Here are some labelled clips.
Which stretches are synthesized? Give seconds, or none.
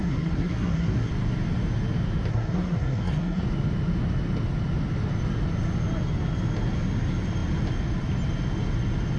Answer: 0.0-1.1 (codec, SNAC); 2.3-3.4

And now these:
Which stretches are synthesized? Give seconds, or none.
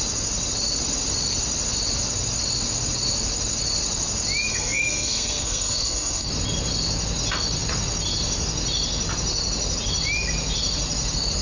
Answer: 4.5-6.3 (codec, SNAC)